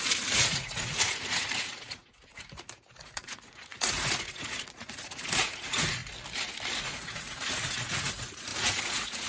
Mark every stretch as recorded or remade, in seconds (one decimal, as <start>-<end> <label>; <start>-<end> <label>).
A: 0.0-6.0 remade; 6.0-6.8 recorded; 6.8-9.3 remade